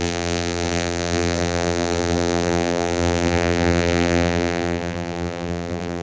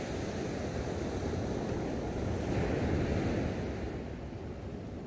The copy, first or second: first